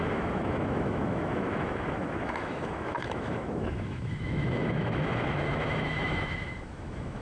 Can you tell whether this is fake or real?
fake